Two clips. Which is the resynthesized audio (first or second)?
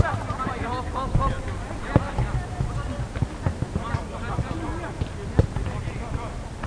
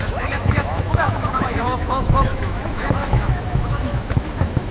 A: second